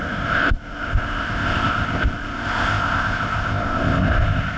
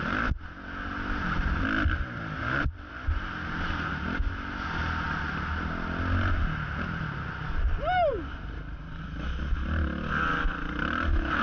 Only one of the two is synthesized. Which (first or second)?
first